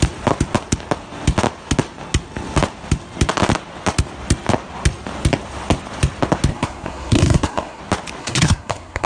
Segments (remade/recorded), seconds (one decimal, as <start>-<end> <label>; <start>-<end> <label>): 0.0-6.5 recorded; 6.5-7.8 remade; 7.8-8.2 recorded; 8.2-9.1 remade